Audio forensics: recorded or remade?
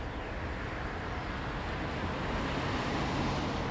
recorded